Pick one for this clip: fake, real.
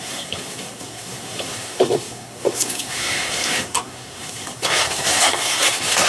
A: fake